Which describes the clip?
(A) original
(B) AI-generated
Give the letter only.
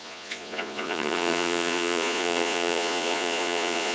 B